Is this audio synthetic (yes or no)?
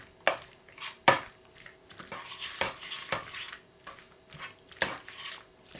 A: no